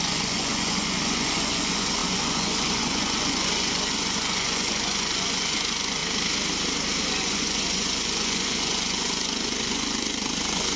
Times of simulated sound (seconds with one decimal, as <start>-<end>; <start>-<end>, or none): 0.0-6.0; 7.0-10.8